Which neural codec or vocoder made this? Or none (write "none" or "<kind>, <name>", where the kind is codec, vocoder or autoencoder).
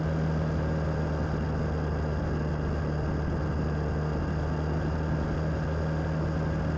none